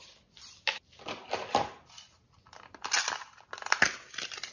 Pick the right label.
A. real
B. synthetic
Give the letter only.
A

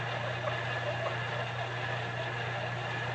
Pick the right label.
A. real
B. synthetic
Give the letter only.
A